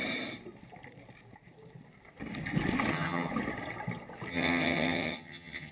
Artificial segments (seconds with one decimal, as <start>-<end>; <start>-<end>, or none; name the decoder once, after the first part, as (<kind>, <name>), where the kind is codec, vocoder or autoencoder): 2.9-3.3 (vocoder, HiFi-GAN); 4.3-5.7